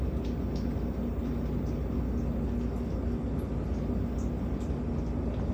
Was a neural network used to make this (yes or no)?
no